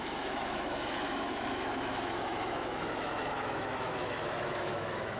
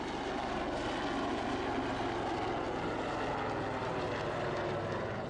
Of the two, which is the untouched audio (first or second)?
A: second